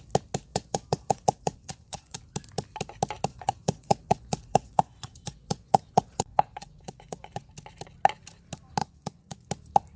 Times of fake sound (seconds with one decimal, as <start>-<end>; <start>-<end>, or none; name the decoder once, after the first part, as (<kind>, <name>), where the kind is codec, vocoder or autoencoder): 0.5-2.2 (vocoder, Vocos); 3.3-7.5; 8.8-9.5

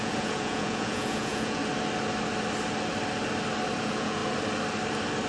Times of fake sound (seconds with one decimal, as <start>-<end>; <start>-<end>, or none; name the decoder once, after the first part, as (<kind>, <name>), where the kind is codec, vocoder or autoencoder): 0.0-1.6 (vocoder, Vocos); 3.8-4.2

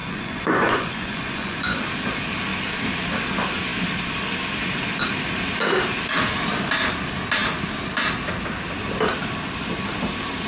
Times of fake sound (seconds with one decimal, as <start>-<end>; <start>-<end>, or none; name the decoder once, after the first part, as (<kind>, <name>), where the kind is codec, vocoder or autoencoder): 0.0-1.8 (vocoder, Vocos)

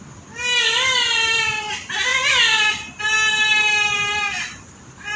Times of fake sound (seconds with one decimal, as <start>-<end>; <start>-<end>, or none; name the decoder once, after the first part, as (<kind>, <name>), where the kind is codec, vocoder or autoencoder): none

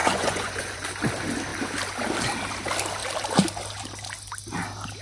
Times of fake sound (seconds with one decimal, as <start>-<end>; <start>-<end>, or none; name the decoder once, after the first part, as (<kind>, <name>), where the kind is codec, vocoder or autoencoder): 0.0-0.9 (vocoder, Vocos)